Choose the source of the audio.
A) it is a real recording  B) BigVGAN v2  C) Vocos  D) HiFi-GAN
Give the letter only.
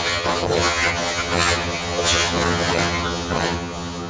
D